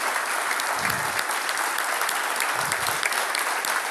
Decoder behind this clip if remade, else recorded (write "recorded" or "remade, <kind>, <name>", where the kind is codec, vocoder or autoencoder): recorded